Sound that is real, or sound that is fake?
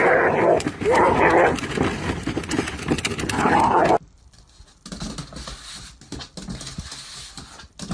real